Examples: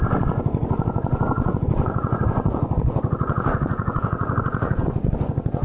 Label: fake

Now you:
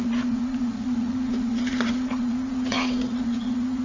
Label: fake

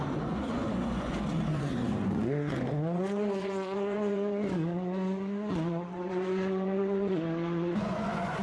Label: fake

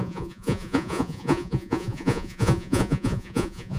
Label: fake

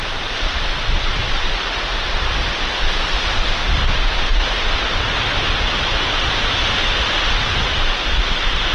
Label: real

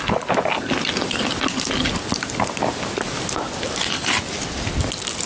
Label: real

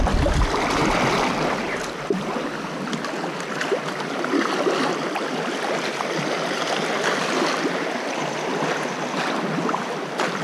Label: real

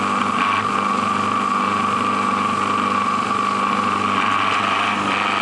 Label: real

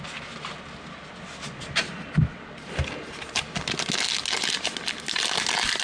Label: real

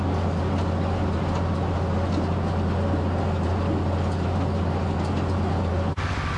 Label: real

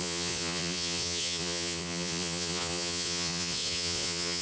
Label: fake